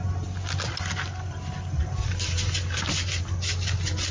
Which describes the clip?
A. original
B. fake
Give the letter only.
A